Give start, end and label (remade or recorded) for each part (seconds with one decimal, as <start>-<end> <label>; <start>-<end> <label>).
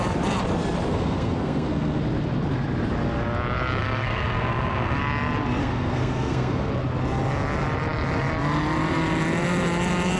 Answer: 0.0-0.9 recorded; 0.9-2.0 remade; 2.0-3.8 recorded; 3.8-5.0 remade; 5.0-5.6 recorded; 5.6-6.7 remade; 6.7-10.2 recorded